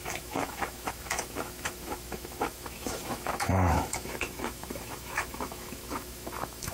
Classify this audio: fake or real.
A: fake